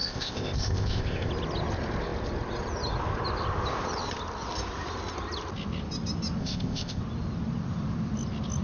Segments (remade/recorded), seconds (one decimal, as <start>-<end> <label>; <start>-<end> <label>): 0.0-1.3 remade; 1.3-6.4 recorded; 6.4-7.0 remade; 7.0-8.6 recorded